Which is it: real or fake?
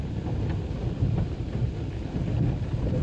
real